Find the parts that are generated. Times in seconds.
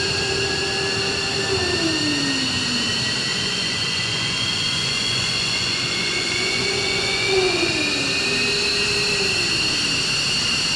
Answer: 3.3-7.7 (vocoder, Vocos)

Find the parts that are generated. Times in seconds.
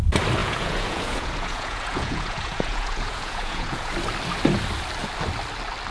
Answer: 0.4-3.9 (vocoder, Vocos)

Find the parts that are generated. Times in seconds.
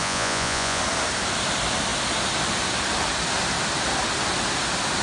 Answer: 0.0-0.8 (vocoder, Vocos)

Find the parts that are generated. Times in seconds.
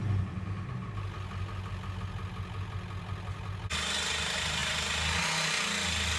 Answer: none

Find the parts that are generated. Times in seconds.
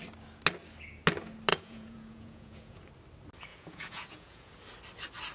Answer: 1.5-2.9 (vocoder, Vocos); 3.5-4.5